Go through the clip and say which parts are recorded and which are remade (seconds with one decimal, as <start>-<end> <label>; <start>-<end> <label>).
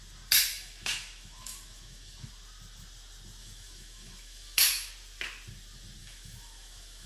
0.0-0.5 recorded; 0.5-2.3 remade; 2.3-3.4 recorded; 3.4-4.9 remade; 4.9-6.0 recorded; 6.0-7.1 remade